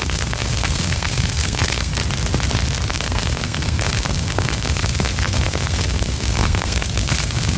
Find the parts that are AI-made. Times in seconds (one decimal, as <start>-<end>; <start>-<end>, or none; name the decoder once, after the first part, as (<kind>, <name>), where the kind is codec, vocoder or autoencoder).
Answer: 0.0-1.9 (codec, SNAC); 2.9-7.6